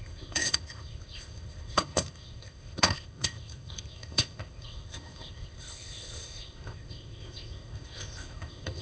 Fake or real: fake